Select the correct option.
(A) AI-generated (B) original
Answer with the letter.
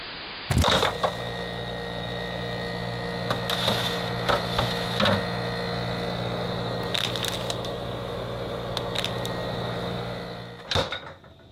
B